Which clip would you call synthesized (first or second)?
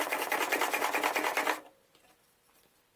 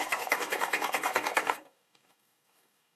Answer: second